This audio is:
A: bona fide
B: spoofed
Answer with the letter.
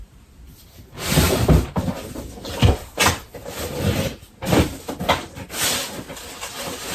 A